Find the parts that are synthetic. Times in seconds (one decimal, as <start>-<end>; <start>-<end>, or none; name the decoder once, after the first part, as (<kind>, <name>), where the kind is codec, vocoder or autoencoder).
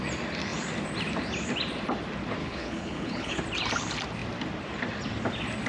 2.4-3.4 (codec, HILCodec)